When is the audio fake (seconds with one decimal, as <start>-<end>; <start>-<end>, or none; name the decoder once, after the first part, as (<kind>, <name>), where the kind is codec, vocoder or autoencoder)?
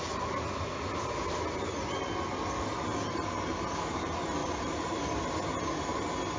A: 4.4-5.0 (vocoder, BigVGAN v2)